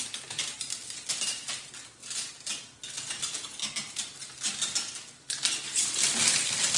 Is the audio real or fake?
real